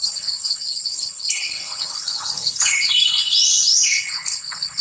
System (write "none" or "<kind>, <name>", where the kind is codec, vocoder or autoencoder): codec, HILCodec